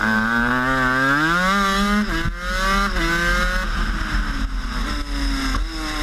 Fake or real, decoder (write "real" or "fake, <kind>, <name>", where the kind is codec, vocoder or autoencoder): real